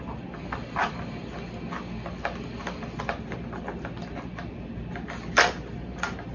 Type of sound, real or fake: real